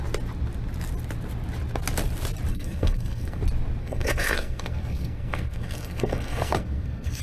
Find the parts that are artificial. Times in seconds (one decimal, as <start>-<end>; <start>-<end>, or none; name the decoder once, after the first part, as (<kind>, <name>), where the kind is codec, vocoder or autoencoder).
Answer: 2.5-3.4 (codec, SNAC); 3.8-7.2